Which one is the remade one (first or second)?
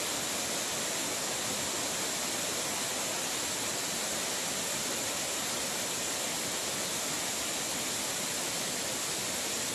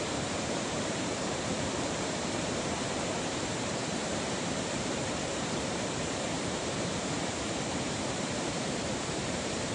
second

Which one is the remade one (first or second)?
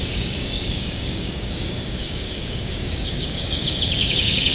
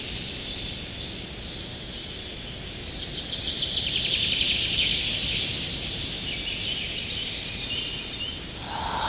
first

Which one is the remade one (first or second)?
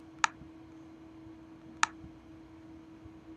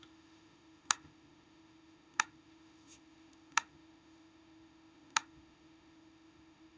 second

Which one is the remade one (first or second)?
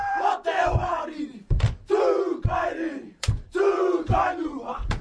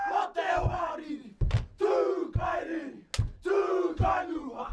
first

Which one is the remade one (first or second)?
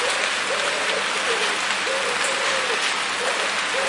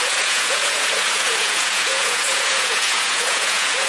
second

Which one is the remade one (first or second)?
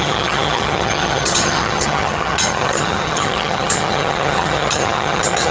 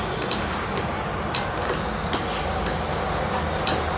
first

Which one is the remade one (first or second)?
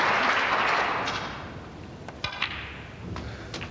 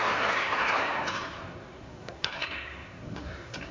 second